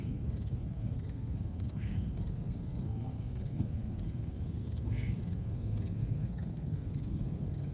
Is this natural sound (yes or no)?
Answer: no